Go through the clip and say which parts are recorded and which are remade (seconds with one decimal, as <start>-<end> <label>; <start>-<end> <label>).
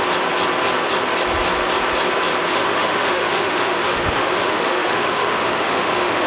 0.0-2.5 recorded; 2.5-6.3 remade